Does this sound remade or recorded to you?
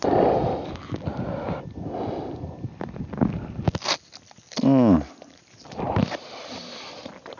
recorded